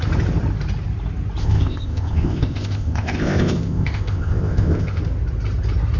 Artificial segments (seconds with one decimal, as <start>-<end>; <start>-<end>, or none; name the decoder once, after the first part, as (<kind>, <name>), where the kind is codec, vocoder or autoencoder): 1.4-5.0 (codec, ZipCodec)